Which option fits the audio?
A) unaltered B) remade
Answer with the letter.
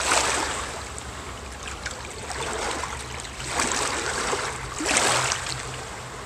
A